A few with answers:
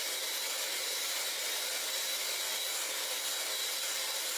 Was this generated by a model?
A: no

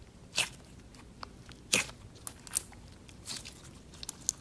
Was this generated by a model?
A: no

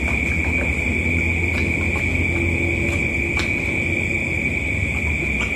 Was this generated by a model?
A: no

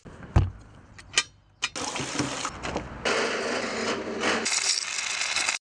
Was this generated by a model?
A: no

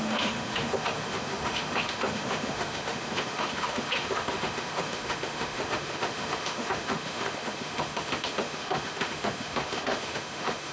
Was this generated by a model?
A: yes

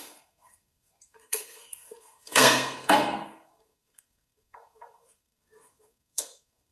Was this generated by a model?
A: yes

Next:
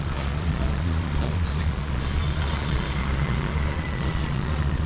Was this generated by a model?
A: yes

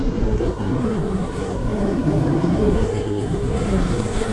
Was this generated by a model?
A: yes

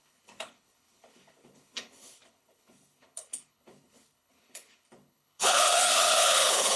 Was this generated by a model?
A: yes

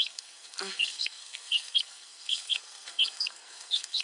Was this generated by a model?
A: yes